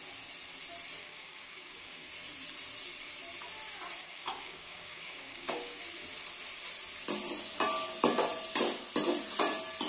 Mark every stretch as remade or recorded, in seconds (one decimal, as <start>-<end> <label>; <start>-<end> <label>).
0.0-1.0 recorded; 1.0-2.1 remade; 2.1-4.0 recorded; 4.0-5.8 remade; 5.8-9.9 recorded